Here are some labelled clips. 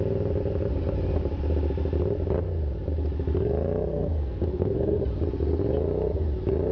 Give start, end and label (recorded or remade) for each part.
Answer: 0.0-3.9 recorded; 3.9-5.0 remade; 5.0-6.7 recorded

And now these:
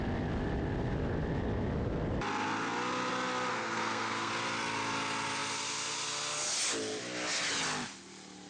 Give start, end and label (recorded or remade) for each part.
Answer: 0.0-3.5 recorded; 3.5-4.3 remade; 4.3-8.5 recorded

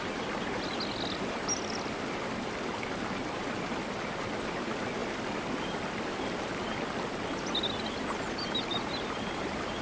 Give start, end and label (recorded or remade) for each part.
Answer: 0.0-9.8 recorded

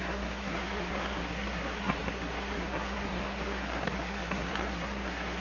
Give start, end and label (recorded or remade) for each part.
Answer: 0.0-5.4 remade

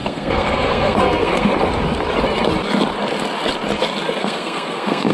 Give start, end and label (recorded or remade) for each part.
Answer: 0.0-1.5 remade; 1.5-4.2 recorded; 4.2-5.1 remade

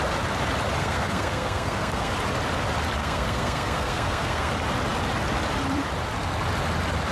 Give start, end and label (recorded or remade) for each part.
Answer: 0.0-0.8 recorded; 0.8-2.1 remade; 2.1-3.0 recorded; 3.0-4.5 remade; 4.5-7.1 recorded